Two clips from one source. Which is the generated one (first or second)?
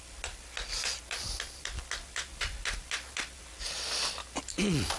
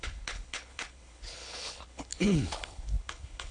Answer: second